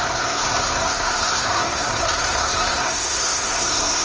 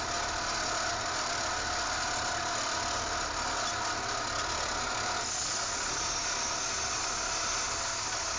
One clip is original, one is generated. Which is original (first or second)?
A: second